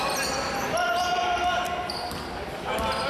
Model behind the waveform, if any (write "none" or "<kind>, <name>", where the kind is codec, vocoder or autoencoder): none